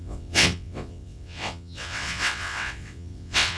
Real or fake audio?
fake